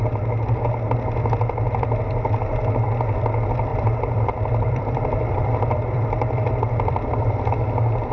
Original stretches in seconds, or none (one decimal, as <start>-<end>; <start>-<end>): 0.0-3.7; 7.5-8.1